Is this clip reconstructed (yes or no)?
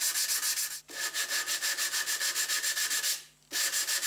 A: no